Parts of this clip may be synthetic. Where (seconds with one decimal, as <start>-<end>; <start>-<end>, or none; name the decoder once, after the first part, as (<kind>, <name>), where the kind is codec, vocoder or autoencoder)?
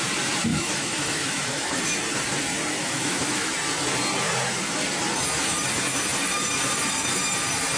0.5-1.8 (autoencoder, DAC-VAE); 2.7-3.5